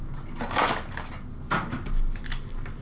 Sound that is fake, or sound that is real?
real